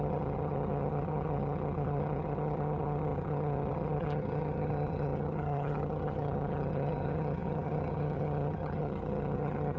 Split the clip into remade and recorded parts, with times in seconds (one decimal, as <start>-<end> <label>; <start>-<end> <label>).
0.0-9.8 remade